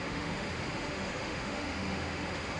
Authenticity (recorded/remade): remade